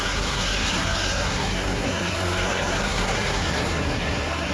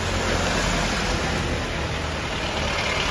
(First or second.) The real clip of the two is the second